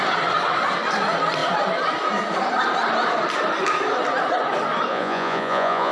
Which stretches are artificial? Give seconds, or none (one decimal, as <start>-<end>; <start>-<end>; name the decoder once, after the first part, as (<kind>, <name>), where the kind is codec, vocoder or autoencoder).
4.9-5.9 (vocoder, Vocos)